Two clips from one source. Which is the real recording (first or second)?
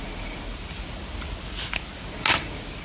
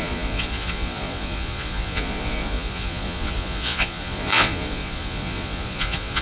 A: first